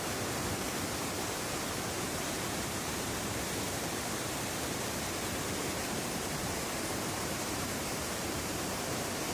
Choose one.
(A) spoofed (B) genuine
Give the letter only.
A